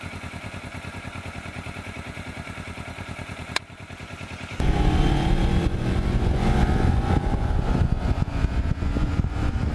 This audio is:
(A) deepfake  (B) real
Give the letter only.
A